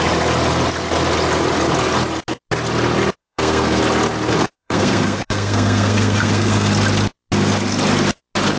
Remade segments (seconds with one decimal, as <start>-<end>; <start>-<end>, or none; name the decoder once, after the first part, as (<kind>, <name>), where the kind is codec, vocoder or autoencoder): 3.2-3.8 (codec, SNAC); 4.4-6.7